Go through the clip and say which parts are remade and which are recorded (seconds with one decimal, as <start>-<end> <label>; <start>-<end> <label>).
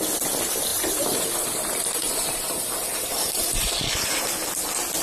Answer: 0.0-0.7 recorded; 0.7-3.7 remade; 3.7-5.0 recorded